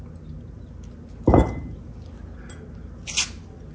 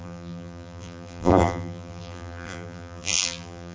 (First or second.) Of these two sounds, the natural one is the first